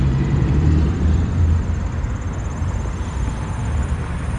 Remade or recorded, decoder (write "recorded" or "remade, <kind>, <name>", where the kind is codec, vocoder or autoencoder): remade, vocoder, BigVGAN v2